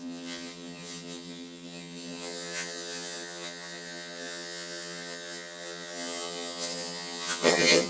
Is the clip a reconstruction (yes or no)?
yes